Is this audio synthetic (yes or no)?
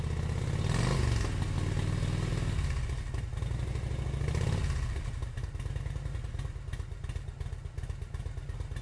no